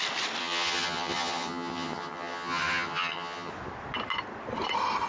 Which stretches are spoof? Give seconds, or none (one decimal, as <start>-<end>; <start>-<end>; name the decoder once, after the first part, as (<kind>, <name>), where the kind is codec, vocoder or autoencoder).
0.4-3.5 (vocoder, HiFi-GAN)